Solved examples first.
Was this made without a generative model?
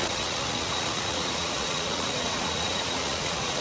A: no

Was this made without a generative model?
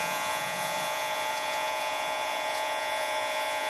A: no